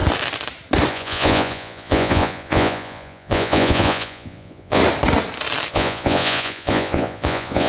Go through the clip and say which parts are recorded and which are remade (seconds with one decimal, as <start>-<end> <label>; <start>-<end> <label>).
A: 0.0-0.9 recorded; 0.9-4.8 remade; 4.8-5.7 recorded; 5.7-7.7 remade